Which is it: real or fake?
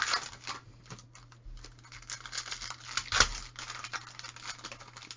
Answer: real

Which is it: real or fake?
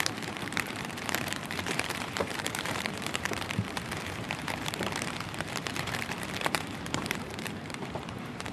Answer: fake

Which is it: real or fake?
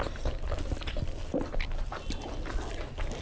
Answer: real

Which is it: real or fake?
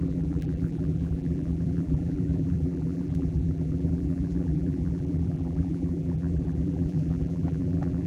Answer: fake